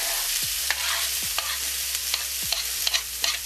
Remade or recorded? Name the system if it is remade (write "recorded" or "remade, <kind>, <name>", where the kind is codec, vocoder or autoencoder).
remade, vocoder, BigVGAN v2